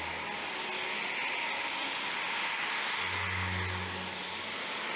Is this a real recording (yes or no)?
yes